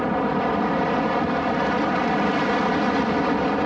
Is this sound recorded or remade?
recorded